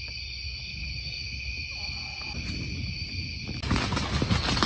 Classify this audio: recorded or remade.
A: recorded